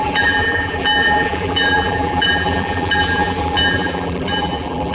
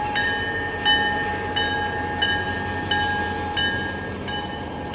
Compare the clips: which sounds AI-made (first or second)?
first